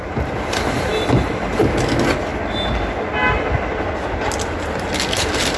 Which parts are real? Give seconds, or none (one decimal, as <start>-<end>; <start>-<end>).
0.0-5.6